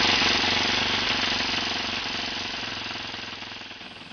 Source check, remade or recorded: recorded